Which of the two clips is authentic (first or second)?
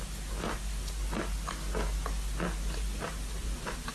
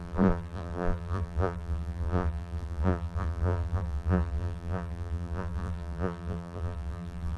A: first